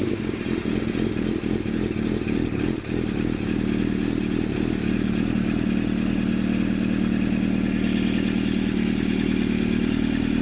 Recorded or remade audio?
recorded